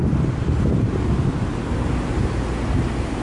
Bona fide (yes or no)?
yes